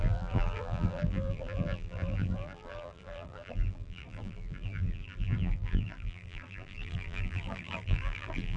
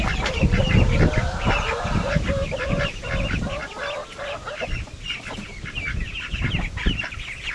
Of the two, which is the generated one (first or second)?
first